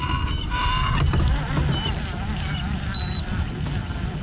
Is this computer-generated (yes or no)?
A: no